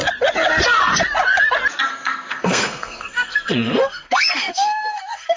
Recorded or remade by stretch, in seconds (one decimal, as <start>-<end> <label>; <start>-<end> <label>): 0.0-1.9 recorded; 1.9-5.4 remade